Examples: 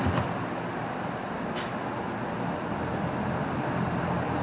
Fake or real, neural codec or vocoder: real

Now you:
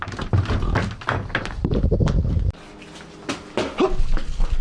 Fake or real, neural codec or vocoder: real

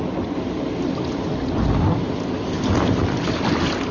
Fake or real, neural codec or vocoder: real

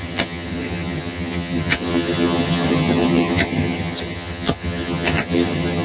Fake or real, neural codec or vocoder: fake, vocoder, HiFi-GAN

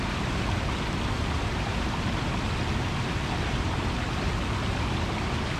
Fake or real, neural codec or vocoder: real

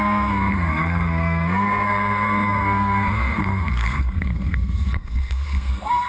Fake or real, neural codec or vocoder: fake, codec, SNAC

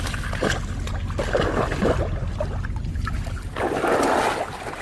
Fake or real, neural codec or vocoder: real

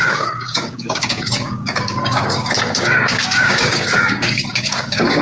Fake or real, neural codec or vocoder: fake, codec, DAC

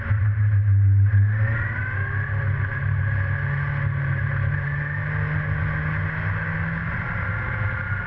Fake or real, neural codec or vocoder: real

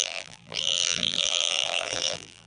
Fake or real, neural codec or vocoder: fake, vocoder, BigVGAN v2